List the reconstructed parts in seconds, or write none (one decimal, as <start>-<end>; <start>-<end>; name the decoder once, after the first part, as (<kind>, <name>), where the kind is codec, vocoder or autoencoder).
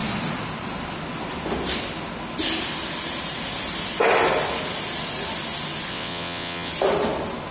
5.9-6.7 (vocoder, WaveNeXt)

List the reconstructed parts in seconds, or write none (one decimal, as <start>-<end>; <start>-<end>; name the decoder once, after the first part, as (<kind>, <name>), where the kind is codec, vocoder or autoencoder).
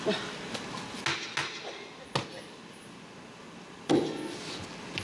none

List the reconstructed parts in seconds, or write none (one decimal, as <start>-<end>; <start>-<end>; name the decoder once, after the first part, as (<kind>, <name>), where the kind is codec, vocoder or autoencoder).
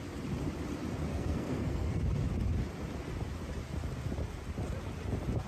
1.1-2.0 (codec, SNAC)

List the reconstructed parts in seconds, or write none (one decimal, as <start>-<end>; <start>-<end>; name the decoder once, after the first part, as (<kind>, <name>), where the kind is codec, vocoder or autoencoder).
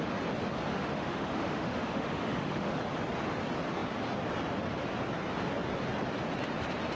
0.7-2.8 (autoencoder, DAC-VAE)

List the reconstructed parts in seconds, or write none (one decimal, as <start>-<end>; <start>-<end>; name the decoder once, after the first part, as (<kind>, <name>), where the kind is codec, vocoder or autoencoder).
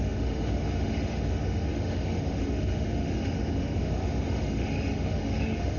0.0-5.8 (autoencoder, DAC-VAE)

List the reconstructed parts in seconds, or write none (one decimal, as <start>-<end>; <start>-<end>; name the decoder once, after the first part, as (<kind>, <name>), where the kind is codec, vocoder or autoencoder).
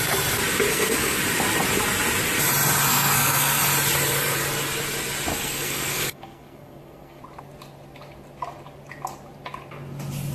0.7-1.2 (codec, SNAC); 2.9-3.6; 5.3-7.2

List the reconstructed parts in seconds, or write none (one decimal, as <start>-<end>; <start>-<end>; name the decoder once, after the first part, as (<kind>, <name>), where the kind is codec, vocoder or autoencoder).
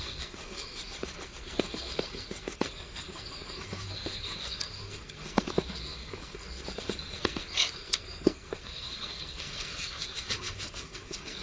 0.0-11.4 (codec, SNAC)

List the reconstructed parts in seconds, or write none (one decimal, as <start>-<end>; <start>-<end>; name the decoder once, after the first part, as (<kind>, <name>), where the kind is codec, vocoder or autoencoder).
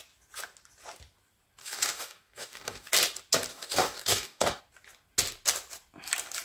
1.6-2.9 (codec, DAC); 3.5-4.6